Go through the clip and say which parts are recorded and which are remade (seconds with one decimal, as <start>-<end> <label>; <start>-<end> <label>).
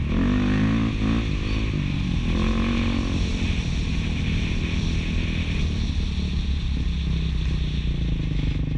0.0-8.8 recorded